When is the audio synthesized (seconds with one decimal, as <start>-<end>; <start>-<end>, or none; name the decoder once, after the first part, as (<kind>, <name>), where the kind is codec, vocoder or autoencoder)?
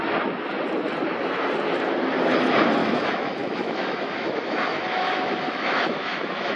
2.8-6.6 (autoencoder, DAC-VAE)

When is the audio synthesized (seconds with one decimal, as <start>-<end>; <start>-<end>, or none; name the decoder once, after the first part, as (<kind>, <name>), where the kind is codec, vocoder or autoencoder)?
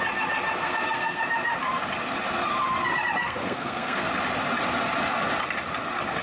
0.6-1.2 (codec, SNAC); 3.2-4.1